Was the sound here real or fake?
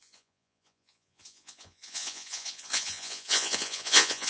fake